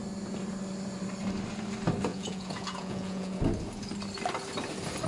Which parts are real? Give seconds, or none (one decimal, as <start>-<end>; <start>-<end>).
0.0-2.1; 3.4-5.1